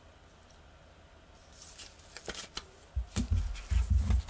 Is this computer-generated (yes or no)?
no